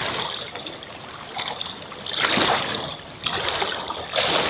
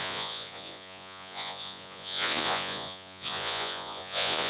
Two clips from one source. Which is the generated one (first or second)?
second